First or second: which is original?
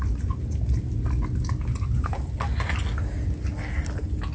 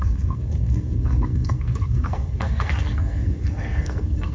first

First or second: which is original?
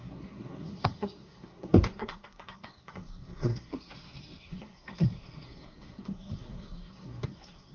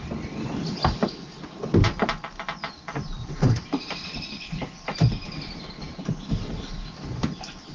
second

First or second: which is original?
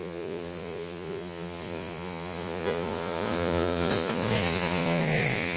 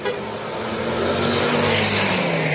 second